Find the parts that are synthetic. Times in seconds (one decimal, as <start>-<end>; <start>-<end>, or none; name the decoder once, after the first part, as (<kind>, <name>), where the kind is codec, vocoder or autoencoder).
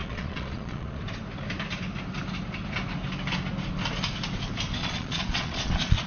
0.0-1.0 (vocoder, Vocos); 4.8-6.1